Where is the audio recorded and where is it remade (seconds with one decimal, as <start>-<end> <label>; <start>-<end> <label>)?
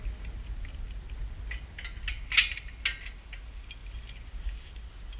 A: 0.0-5.2 recorded